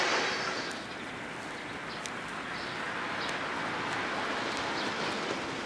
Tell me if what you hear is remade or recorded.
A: recorded